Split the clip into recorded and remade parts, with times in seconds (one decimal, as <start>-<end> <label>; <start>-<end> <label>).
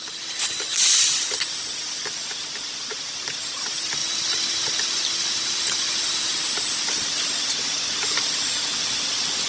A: 0.0-0.7 recorded; 0.7-2.3 remade; 2.3-4.0 recorded; 4.0-7.6 remade; 7.6-9.5 recorded